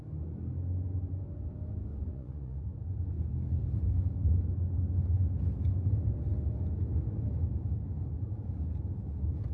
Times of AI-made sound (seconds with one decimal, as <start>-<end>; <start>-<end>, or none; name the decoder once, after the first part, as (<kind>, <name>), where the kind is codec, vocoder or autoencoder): 1.9-2.6 (vocoder, Vocos)